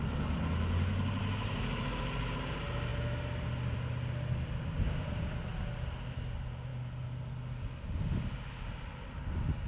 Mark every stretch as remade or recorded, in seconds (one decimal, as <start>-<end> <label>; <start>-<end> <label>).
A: 0.0-9.7 recorded